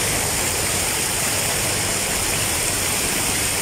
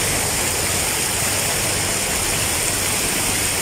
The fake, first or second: first